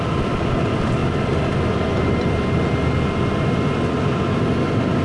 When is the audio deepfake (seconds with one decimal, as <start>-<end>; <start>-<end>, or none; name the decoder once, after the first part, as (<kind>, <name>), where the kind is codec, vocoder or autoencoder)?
0.0-1.0 (vocoder, BigVGAN v2); 4.0-5.0